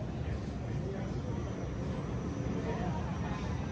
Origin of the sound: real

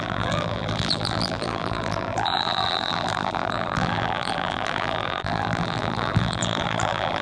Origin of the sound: fake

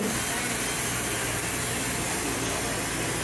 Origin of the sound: real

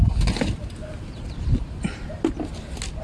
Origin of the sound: real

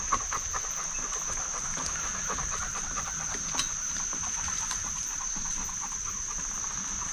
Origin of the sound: real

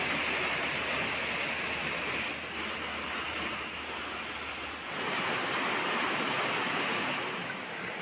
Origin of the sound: real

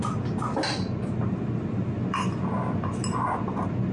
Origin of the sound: real